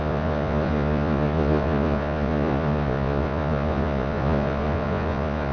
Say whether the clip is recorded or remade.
remade